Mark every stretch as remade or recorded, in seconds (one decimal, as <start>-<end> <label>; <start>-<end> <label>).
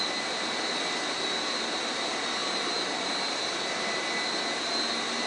0.0-5.3 remade